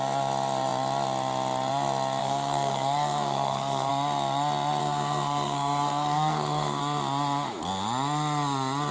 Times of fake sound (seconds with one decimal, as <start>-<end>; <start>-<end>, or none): 2.2-3.9; 4.8-6.8